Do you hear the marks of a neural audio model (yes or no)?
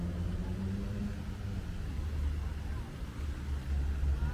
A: no